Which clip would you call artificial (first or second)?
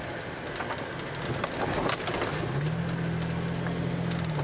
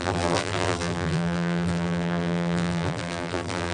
second